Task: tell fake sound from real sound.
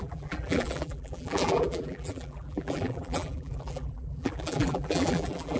fake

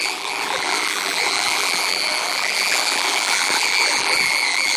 fake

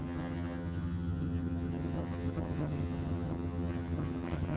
fake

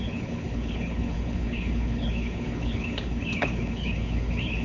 fake